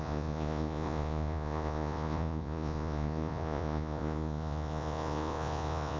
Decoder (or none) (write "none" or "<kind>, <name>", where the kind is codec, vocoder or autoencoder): vocoder, Vocos